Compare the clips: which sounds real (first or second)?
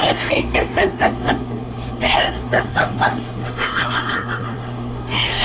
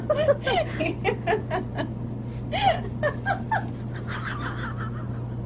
second